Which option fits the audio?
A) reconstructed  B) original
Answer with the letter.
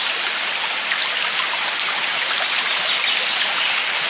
B